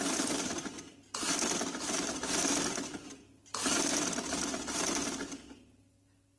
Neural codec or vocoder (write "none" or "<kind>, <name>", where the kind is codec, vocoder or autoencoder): none